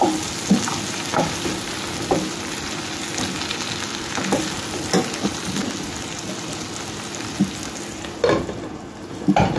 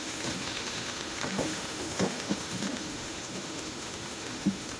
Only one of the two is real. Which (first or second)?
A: first